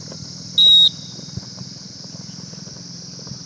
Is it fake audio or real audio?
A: real